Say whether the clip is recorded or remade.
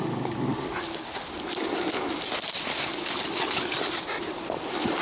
recorded